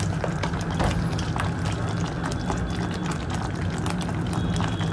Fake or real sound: real